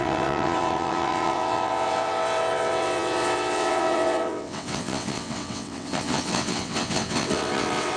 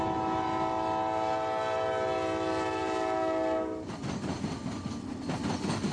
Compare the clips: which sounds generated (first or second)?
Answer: first